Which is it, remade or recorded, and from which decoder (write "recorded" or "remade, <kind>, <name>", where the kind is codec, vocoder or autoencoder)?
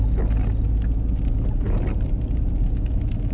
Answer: recorded